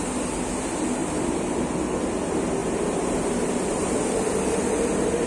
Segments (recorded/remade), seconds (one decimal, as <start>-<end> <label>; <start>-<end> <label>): 0.0-1.0 recorded; 1.0-1.6 remade; 1.6-2.6 recorded; 2.6-4.2 remade; 4.2-5.3 recorded